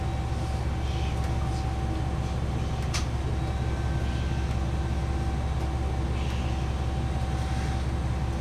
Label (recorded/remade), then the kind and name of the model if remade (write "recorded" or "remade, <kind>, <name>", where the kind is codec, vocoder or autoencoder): recorded